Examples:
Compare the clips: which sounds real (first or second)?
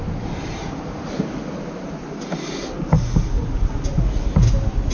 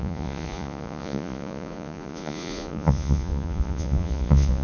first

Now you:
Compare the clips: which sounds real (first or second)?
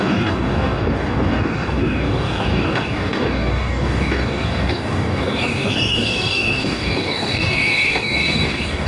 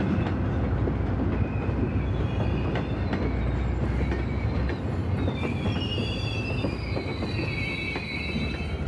second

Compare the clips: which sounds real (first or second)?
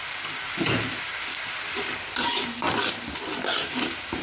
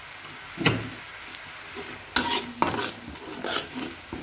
second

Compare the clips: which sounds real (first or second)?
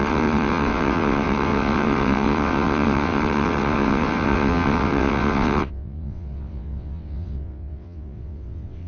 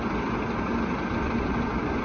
second